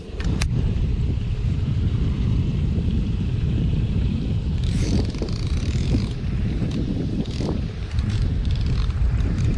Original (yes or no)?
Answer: no